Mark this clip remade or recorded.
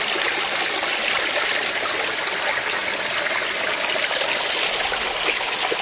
recorded